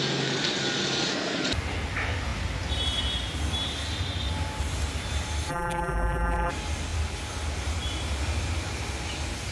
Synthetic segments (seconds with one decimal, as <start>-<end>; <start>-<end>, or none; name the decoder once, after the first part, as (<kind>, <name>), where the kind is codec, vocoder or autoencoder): 5.5-6.5 (vocoder, BigVGAN v2)

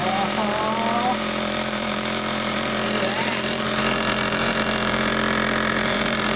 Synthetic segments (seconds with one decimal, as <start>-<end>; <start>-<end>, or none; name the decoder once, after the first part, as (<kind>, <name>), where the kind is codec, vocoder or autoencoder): 0.0-5.1 (vocoder, BigVGAN v2); 5.7-6.4

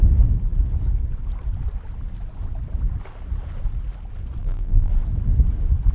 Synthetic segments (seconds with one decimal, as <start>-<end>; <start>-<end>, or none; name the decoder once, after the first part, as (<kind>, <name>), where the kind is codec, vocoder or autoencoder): 4.4-4.9 (vocoder, BigVGAN v2)

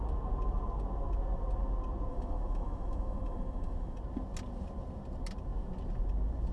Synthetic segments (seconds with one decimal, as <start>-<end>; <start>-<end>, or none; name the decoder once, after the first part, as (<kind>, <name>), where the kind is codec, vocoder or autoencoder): 2.1-4.0 (autoencoder, DAC-VAE)